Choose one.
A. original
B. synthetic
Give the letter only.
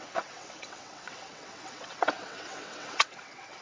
B